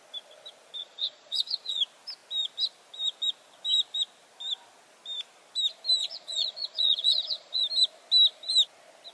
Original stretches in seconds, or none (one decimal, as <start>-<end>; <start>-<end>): 0.0-0.8; 1.8-6.0; 7.6-9.1